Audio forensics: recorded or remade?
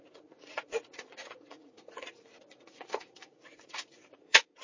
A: remade